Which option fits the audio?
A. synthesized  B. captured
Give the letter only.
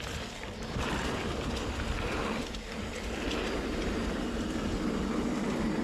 B